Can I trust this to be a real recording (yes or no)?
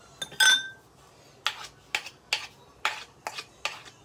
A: yes